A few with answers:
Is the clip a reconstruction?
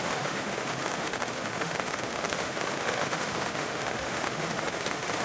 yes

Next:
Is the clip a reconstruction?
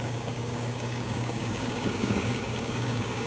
yes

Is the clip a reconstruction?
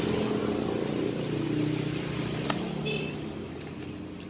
no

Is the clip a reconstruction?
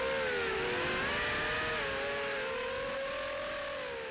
no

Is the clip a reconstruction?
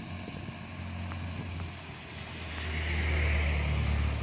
no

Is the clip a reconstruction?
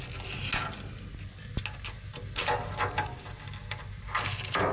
no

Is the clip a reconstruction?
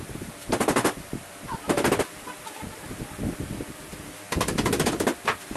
no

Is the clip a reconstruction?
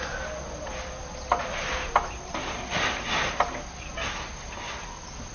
no